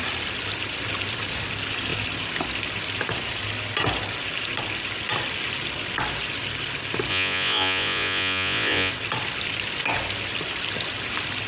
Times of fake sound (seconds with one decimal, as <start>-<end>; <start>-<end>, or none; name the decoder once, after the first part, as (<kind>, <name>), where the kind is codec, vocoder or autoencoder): 7.1-8.9 (vocoder, Vocos)